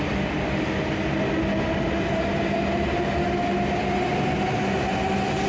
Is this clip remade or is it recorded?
recorded